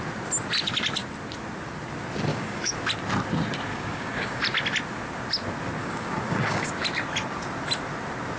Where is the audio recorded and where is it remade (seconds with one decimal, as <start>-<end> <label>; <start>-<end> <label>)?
0.0-2.3 recorded; 2.3-2.8 remade; 2.8-3.7 recorded; 3.7-4.4 remade; 4.4-5.8 recorded; 5.8-6.7 remade; 6.7-8.4 recorded